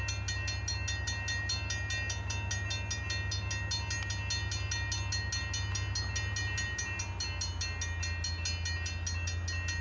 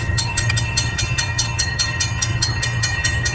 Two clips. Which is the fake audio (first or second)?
second